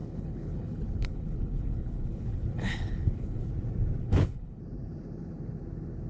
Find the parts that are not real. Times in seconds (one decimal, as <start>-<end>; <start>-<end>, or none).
0.0-3.5; 4.0-4.6